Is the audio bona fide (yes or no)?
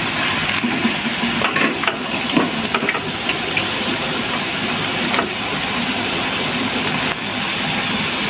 yes